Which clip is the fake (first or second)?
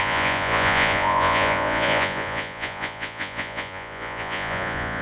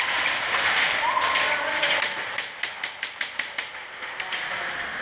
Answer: first